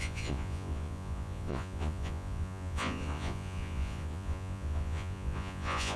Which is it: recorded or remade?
remade